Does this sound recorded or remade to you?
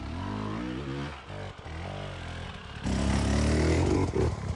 recorded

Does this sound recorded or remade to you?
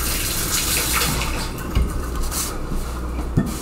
remade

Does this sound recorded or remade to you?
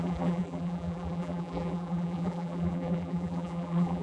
remade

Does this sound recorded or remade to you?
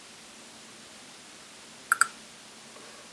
remade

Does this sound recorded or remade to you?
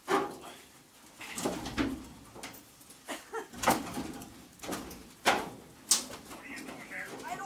recorded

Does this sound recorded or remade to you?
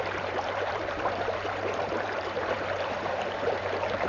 remade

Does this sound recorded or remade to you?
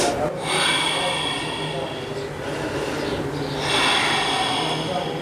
recorded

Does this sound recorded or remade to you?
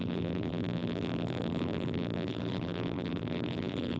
remade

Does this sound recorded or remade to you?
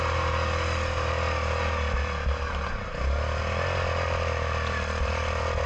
recorded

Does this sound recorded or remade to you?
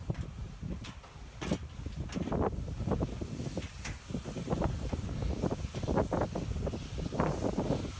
remade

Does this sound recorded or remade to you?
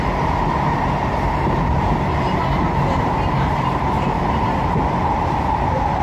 remade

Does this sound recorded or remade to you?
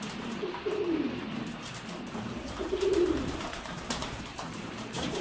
remade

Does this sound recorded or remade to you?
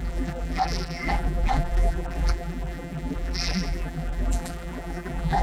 remade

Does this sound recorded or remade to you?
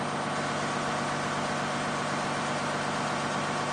recorded